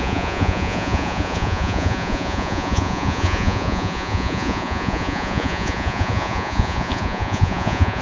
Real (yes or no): no